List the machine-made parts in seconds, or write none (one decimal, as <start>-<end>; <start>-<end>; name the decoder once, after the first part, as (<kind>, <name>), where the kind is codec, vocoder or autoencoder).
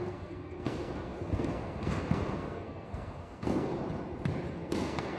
0.0-3.7 (codec, SNAC); 4.5-5.2